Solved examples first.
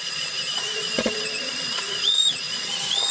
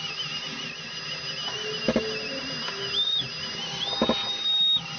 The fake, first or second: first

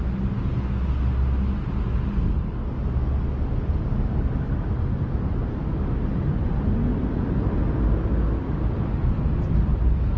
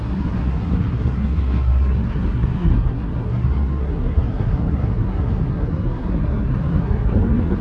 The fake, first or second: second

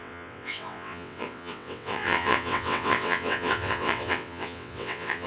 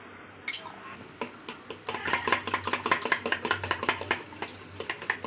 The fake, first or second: first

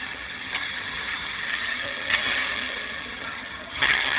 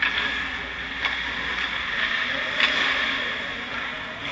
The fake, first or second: first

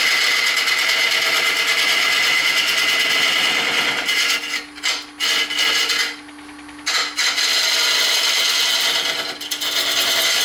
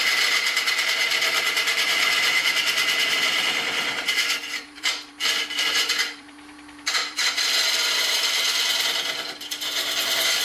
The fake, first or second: second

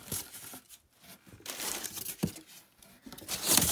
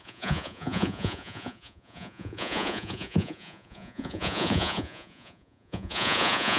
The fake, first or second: second